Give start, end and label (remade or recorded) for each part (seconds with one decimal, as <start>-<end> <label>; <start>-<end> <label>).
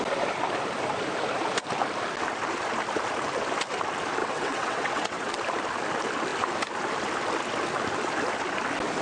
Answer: 0.0-4.2 recorded; 4.2-5.3 remade; 5.3-9.0 recorded